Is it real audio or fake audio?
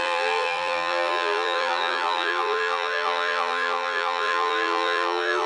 fake